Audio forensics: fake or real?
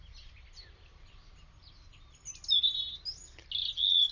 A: real